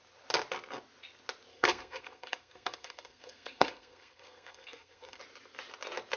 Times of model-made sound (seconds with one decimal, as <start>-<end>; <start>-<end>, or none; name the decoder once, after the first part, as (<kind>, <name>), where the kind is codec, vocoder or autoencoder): 1.5-5.2 (codec, SNAC)